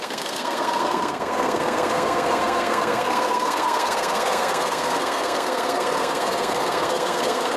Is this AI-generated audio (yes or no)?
yes